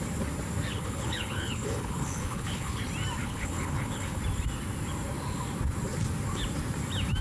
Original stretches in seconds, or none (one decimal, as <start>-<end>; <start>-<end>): 0.0-0.7; 2.8-3.2; 4.2-7.2